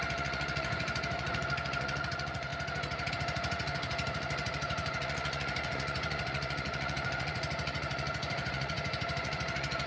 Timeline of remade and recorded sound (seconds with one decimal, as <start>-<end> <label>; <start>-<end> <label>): 0.0-2.5 remade; 2.5-3.1 recorded; 3.1-9.9 remade